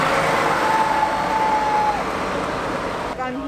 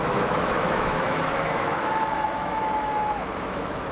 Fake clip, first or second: second